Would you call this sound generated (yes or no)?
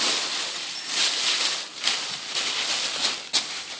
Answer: no